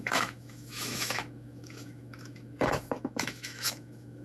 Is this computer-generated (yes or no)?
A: yes